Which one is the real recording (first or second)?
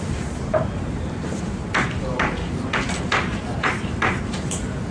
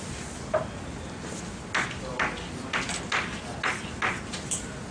second